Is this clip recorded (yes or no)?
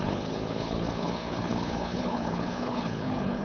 no